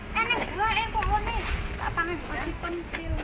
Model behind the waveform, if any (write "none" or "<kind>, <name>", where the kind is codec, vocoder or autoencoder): none